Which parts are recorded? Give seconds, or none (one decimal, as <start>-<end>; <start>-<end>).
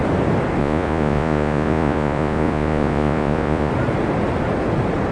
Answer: 0.0-0.6; 3.7-5.1